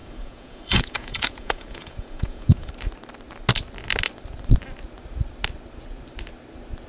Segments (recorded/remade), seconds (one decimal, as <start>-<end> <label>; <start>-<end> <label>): 0.0-2.7 remade; 2.7-6.9 recorded